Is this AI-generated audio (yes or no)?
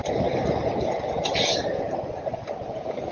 no